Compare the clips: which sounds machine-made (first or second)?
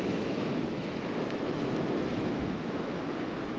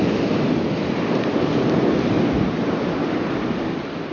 first